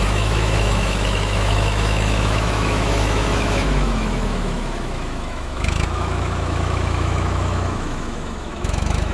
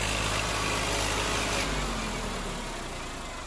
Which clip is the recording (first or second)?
second